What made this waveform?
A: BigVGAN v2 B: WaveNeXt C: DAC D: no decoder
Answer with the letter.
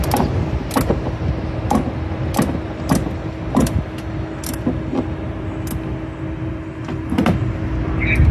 D